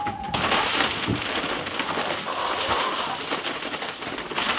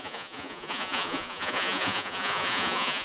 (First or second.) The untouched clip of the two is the first